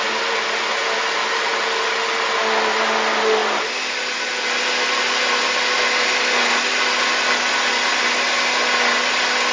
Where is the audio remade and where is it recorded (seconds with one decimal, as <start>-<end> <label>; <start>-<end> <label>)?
0.0-9.5 recorded